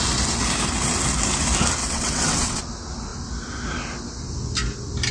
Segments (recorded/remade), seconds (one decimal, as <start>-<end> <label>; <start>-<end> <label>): 0.0-1.8 recorded; 1.8-2.6 remade; 2.6-5.1 recorded